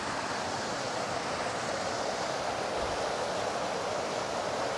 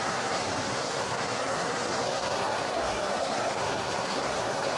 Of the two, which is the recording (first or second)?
first